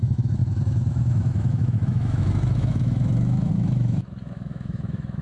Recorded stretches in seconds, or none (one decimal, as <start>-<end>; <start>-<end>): none

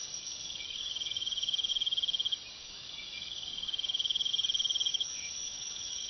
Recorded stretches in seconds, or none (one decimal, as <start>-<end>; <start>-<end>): 1.7-2.5; 4.3-4.9

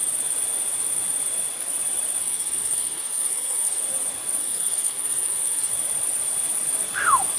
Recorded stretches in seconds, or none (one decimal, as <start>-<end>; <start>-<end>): 0.0-2.2; 3.8-4.4; 5.7-7.4